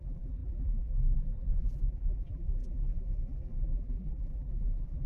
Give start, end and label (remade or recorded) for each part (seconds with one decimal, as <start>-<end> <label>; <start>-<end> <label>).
0.0-5.1 remade

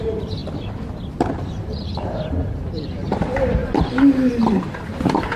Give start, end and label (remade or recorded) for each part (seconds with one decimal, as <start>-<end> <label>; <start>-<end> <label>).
0.0-0.4 remade; 0.4-1.3 recorded; 1.3-5.4 remade

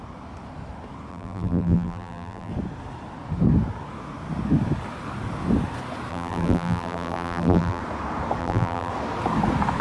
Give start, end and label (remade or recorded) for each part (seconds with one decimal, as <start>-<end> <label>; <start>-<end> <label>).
0.0-1.1 recorded; 1.1-2.5 remade; 2.5-6.1 recorded; 6.1-7.8 remade; 7.8-8.4 recorded; 8.4-8.9 remade; 8.9-9.8 recorded

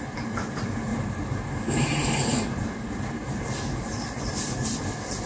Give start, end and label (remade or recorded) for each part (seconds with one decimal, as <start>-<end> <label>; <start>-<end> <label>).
0.0-0.9 recorded; 0.9-1.8 remade; 1.8-2.3 recorded; 2.3-4.4 remade; 4.4-5.3 recorded

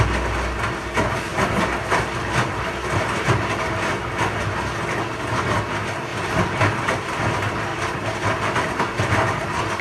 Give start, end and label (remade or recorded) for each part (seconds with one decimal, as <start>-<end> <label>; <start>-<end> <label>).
0.0-6.1 recorded; 6.1-6.6 remade; 6.6-7.7 recorded; 7.7-8.2 remade; 8.2-9.8 recorded